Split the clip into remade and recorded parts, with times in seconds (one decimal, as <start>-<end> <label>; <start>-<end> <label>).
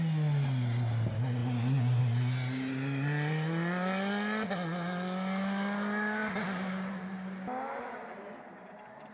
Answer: 0.0-9.1 recorded